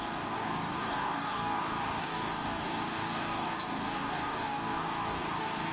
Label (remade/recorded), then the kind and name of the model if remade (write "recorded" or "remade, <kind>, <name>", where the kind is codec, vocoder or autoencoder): remade, codec, DAC